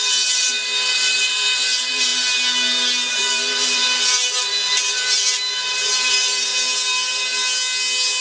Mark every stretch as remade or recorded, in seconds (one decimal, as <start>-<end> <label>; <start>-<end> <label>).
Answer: 0.0-2.1 remade; 2.1-3.1 recorded; 3.1-6.5 remade; 6.5-8.2 recorded